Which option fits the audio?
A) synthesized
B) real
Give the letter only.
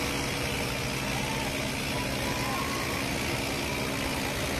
B